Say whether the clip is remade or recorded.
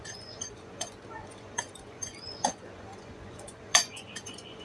remade